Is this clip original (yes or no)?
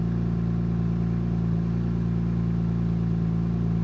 yes